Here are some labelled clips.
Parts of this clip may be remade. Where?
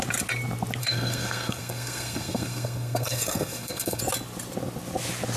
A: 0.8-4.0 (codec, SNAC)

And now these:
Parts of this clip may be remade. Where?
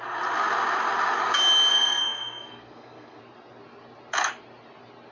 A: 1.7-3.2 (codec, SNAC)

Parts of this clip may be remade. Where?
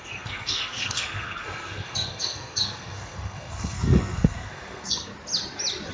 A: 0.0-5.1 (codec, SNAC)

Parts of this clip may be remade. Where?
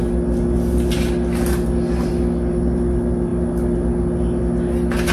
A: none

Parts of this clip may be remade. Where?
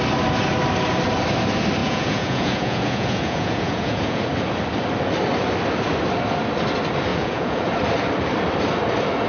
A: 1.8-4.2 (vocoder, Vocos); 7.1-7.7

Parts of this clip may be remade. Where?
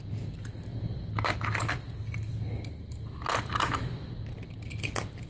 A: none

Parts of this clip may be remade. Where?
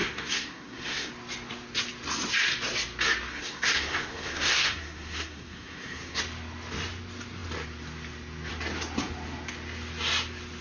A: 0.0-1.1 (codec, SNAC); 3.3-6.2